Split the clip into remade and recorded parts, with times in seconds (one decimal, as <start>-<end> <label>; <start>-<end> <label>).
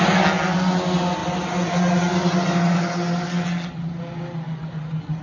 0.0-5.2 recorded